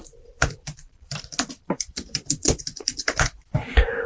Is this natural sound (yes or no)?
no